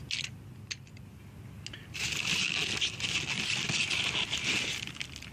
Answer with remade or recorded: recorded